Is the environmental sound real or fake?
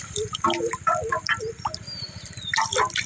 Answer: real